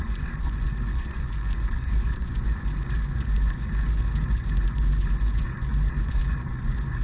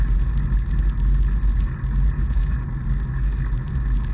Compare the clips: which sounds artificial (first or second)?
first